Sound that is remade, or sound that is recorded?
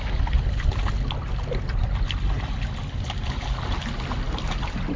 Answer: recorded